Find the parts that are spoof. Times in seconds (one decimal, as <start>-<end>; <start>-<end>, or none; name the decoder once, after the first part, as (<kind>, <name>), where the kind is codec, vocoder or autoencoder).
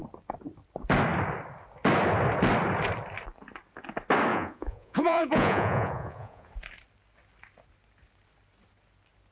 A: 4.3-6.5 (vocoder, Vocos)